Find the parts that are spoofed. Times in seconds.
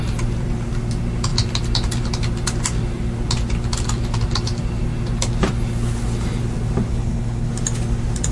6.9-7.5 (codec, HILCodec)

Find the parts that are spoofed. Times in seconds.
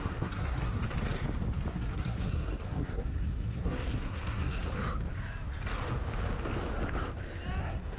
0.0-0.8 (codec, SNAC); 1.7-4.7; 7.6-8.0